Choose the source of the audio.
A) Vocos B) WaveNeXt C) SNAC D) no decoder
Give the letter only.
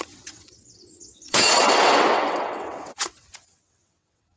B